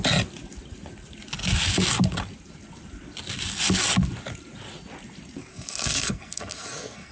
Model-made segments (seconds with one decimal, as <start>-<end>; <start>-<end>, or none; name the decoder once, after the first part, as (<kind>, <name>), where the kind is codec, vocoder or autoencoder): 5.5-7.1 (codec, SNAC)